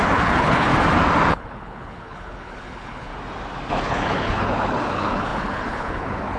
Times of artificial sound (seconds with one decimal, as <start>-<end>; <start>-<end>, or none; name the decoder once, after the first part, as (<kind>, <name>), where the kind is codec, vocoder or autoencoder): 0.0-0.7 (codec, HILCodec); 1.3-3.1; 3.7-6.4